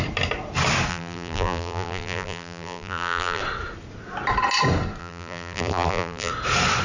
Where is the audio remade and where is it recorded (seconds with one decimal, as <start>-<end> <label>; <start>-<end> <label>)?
0.0-0.9 recorded; 0.9-3.4 remade; 3.4-5.0 recorded; 5.0-6.3 remade; 6.3-6.8 recorded